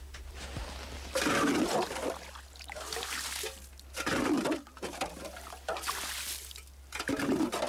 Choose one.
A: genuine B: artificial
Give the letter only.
A